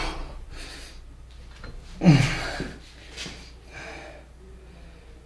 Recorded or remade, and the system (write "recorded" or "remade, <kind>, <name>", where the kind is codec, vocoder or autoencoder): recorded